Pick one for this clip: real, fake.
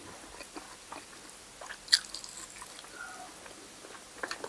real